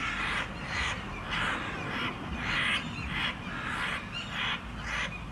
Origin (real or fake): real